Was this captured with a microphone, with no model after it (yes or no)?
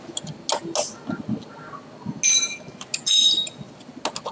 yes